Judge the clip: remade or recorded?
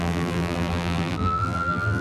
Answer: remade